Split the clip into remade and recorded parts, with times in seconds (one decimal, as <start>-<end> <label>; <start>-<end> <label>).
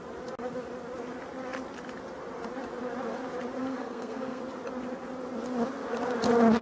0.0-3.6 recorded; 3.6-4.4 remade; 4.4-6.6 recorded